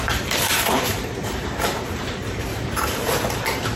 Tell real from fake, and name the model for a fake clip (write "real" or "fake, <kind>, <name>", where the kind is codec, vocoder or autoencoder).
fake, vocoder, BigVGAN v2